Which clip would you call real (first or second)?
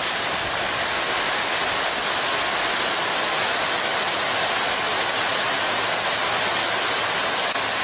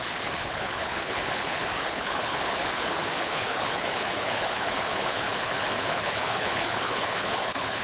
first